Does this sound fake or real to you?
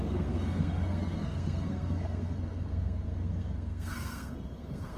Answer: fake